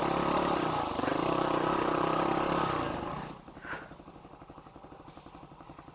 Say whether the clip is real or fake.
real